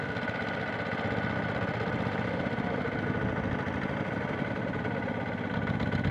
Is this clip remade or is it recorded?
recorded